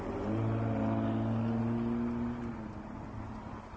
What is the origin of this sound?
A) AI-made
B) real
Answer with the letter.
B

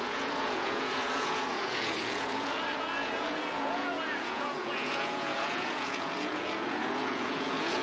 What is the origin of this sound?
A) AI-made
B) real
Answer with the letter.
A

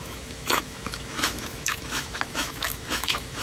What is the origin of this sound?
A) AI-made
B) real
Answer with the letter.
A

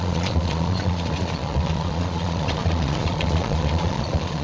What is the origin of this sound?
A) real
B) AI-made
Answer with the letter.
B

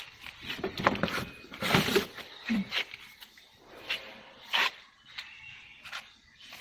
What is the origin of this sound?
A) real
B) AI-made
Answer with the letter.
B